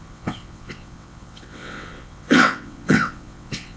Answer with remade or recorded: remade